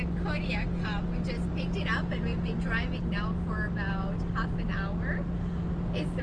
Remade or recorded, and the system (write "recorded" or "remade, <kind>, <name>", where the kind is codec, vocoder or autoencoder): recorded